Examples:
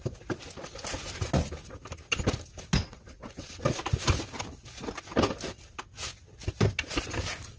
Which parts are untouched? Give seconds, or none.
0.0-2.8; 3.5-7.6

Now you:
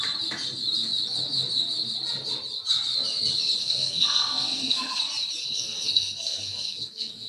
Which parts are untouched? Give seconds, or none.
0.0-3.6; 5.0-5.4

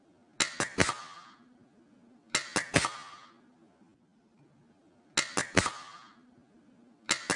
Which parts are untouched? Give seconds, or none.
0.0-7.4

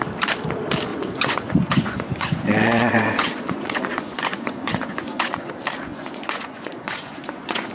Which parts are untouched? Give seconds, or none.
0.0-0.9; 5.5-5.9

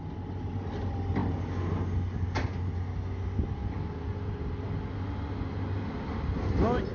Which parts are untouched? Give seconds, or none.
0.0-6.9

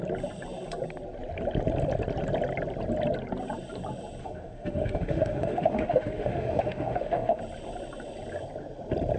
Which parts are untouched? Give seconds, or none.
0.0-4.2; 7.4-9.2